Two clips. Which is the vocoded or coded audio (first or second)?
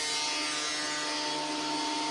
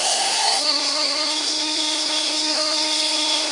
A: second